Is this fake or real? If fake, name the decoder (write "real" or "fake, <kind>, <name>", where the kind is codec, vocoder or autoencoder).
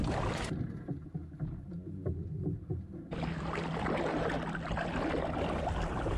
real